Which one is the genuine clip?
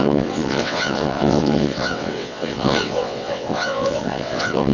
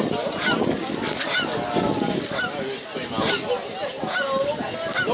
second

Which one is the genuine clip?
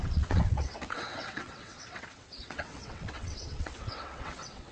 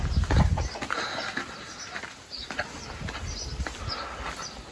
second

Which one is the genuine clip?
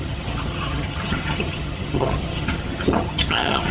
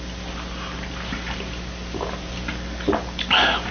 second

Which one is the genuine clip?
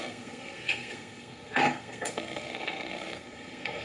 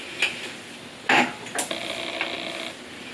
second